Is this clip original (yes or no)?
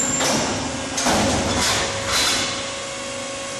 yes